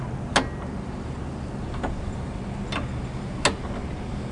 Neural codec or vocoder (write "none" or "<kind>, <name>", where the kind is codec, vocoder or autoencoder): none